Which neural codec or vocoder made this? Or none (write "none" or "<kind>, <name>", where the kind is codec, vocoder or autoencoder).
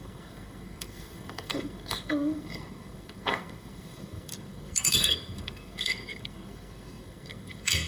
codec, SNAC